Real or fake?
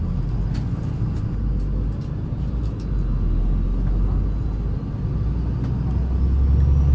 real